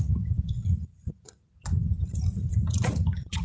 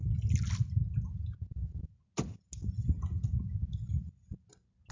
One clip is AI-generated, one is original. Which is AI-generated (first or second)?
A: first